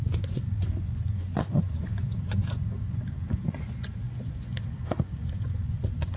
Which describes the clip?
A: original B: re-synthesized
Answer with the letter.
B